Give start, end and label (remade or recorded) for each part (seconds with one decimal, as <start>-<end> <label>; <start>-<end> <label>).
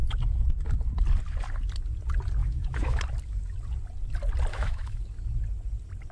0.0-2.4 recorded; 2.4-3.0 remade; 3.0-4.5 recorded; 4.5-5.0 remade; 5.0-6.1 recorded